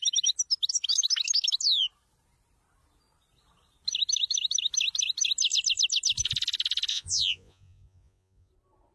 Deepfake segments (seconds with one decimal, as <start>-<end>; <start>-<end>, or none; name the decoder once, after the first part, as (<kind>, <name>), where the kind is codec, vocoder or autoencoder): 6.9-8.5 (vocoder, Vocos)

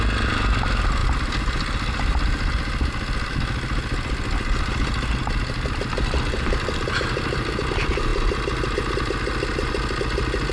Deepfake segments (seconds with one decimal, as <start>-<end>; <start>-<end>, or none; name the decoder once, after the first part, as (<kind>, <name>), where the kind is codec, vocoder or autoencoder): none

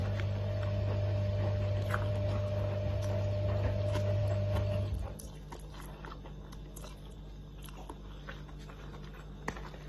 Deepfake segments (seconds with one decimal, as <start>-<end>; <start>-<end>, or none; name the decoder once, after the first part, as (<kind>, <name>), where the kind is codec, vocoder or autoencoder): none

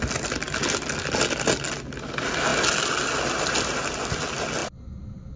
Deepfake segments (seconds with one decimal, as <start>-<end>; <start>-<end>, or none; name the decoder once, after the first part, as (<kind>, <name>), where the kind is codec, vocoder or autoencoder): none